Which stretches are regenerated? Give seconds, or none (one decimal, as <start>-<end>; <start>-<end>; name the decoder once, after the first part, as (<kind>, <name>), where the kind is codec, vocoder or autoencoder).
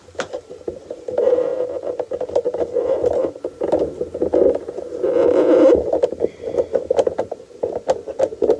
none